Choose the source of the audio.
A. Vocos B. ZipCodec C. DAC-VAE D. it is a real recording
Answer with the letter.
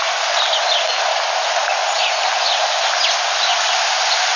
D